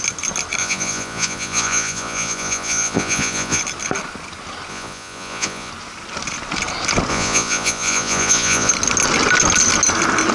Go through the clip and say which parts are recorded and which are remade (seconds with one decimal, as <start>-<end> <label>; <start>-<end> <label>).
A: 0.0-0.6 recorded; 0.6-3.6 remade; 3.6-4.7 recorded; 4.7-5.7 remade; 5.7-7.1 recorded; 7.1-8.7 remade; 8.7-10.3 recorded